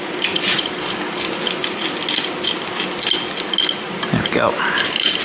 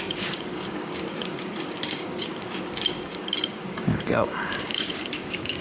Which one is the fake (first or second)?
second